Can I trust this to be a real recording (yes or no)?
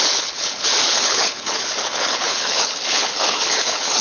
no